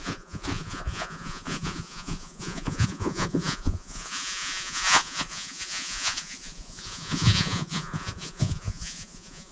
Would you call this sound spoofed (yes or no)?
yes